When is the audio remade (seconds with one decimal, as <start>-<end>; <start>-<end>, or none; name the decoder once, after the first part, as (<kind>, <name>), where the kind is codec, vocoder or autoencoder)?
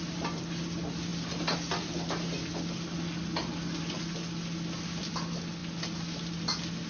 none